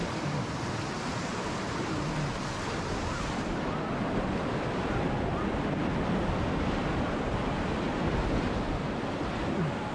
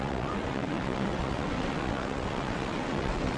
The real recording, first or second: first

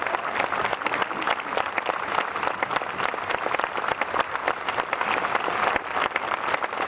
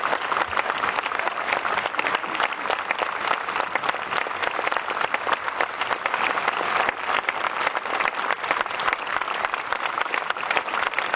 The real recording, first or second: first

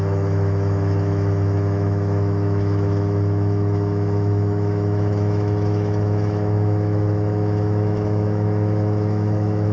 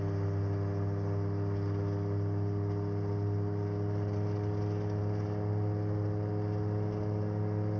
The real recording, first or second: second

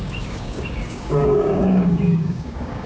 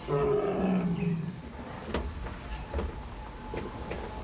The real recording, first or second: second